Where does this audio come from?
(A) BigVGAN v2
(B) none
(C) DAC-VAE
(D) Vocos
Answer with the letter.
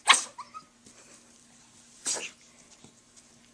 B